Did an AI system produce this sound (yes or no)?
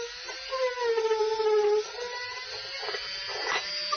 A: no